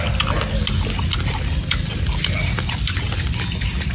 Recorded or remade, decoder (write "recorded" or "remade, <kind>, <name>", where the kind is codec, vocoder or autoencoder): recorded